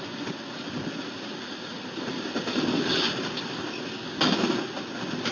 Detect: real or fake real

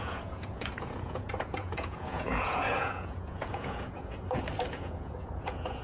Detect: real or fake fake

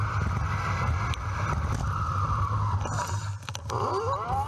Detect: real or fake real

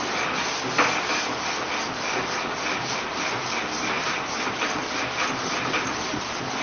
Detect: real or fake real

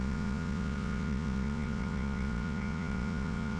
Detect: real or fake fake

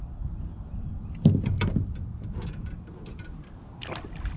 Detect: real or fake real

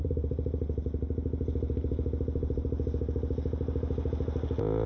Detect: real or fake real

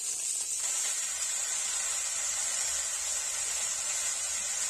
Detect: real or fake real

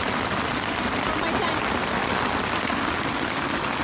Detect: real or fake real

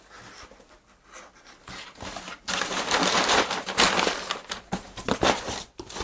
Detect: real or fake real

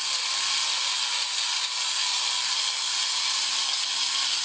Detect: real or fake real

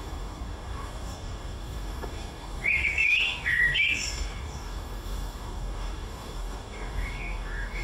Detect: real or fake fake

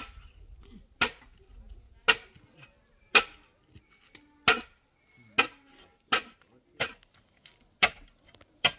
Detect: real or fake real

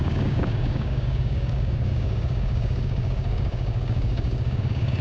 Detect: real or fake fake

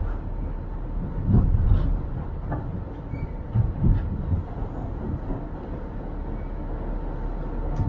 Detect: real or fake real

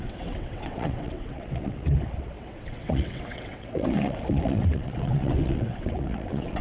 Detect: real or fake fake